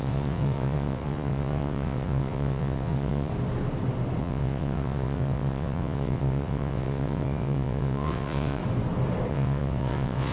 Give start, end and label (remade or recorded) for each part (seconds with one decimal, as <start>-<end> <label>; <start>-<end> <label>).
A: 0.0-3.3 remade; 3.3-4.2 recorded; 4.2-8.6 remade; 8.6-9.3 recorded; 9.3-10.3 remade